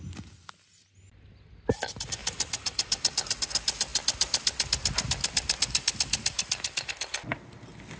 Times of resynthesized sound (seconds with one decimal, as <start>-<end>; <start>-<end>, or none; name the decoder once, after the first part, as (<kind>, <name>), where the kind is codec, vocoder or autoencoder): none